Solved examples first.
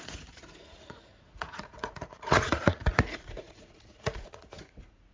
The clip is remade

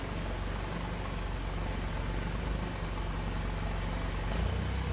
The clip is recorded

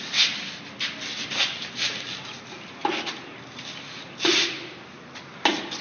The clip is recorded